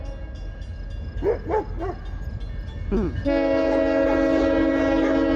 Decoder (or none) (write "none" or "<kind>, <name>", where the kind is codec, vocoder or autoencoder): none